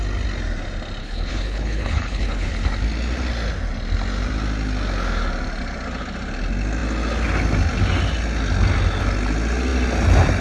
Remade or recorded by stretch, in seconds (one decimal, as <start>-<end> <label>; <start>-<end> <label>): 0.0-1.0 recorded; 1.0-2.5 remade; 2.5-10.4 recorded

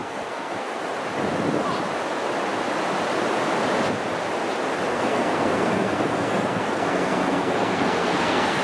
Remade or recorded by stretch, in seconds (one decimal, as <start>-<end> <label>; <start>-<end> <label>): 0.0-0.8 remade; 0.8-4.9 recorded; 4.9-8.6 remade